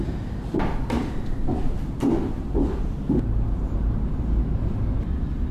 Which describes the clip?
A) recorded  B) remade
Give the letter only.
A